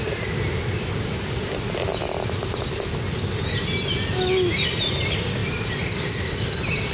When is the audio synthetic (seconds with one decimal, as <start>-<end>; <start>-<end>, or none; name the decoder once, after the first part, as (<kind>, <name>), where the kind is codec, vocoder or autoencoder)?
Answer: none